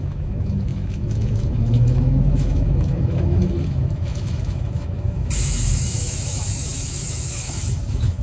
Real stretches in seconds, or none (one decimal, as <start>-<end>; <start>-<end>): none

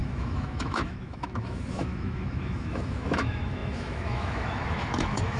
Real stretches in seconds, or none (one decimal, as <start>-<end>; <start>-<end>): none